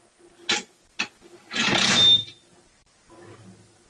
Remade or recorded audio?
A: recorded